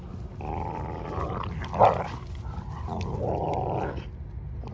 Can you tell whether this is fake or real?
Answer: real